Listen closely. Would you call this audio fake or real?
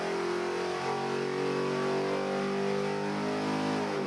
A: real